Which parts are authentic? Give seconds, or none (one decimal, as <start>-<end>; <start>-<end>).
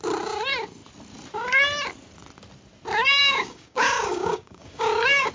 0.0-3.2